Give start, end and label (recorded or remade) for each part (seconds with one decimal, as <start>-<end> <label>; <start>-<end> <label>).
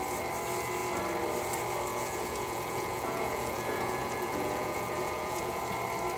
0.0-1.9 recorded; 1.9-5.6 remade; 5.6-6.2 recorded